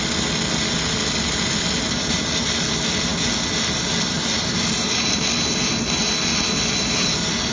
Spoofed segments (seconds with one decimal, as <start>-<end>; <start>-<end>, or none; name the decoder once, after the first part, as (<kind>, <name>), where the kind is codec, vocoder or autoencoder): none